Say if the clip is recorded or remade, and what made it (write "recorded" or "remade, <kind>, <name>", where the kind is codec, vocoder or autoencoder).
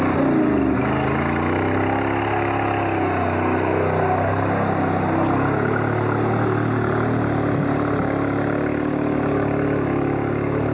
recorded